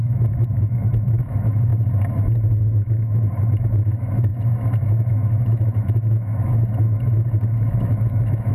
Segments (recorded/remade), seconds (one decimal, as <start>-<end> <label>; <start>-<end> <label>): 0.0-1.7 remade; 1.7-2.6 recorded; 2.6-4.3 remade; 4.3-5.0 recorded; 5.0-8.5 remade